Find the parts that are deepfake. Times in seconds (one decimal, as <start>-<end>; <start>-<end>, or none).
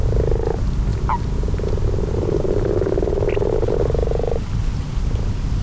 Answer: 4.0-5.6